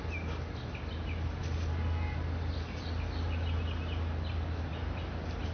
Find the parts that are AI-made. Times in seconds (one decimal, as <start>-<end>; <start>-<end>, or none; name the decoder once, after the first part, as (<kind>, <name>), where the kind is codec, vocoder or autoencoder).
none